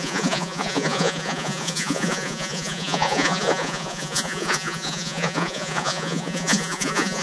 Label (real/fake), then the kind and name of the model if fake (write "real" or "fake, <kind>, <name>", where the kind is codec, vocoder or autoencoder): fake, vocoder, Vocos